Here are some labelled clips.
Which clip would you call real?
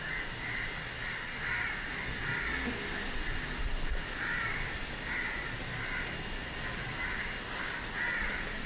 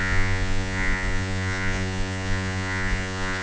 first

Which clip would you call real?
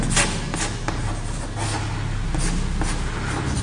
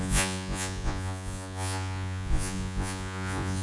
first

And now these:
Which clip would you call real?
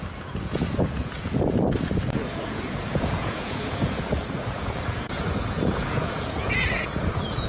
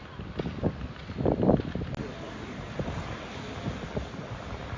second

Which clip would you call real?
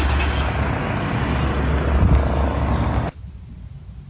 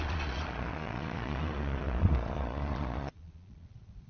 first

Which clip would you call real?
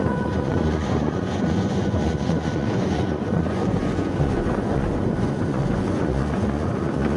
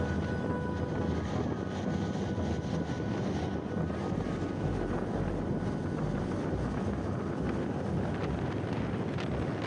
second